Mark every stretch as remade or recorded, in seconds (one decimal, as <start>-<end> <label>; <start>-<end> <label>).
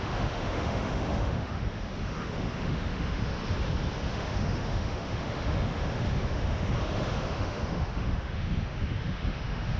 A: 0.0-3.4 remade; 3.4-4.1 recorded; 4.1-9.8 remade